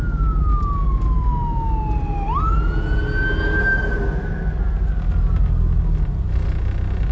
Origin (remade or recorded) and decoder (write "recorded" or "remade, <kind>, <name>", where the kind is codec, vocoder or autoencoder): recorded